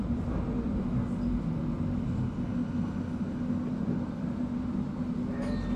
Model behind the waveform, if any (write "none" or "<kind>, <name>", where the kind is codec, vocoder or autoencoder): none